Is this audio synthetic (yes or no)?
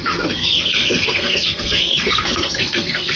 yes